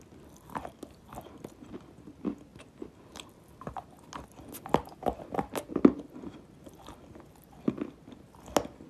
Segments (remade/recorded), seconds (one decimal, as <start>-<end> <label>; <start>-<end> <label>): 0.0-8.9 recorded